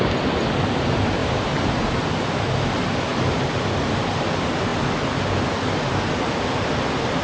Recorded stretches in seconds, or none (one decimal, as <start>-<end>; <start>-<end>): 0.0-1.2; 1.8-7.2